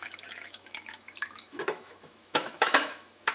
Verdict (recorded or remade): remade